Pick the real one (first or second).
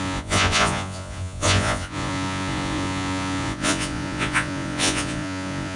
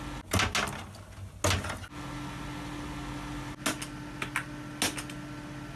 second